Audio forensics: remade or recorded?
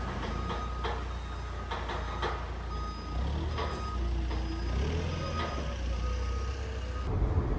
recorded